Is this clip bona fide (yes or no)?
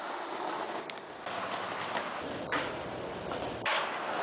yes